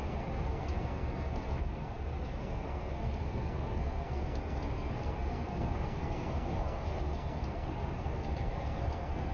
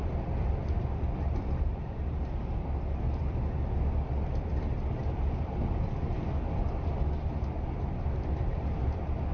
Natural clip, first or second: second